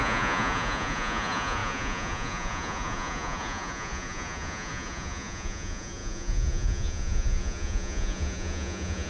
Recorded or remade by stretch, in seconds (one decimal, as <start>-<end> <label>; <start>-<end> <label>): 0.0-9.1 remade